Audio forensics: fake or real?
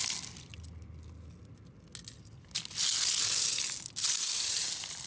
real